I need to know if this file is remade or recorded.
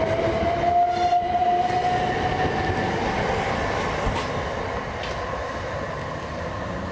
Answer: recorded